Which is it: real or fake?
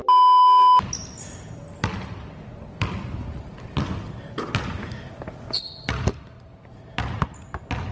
real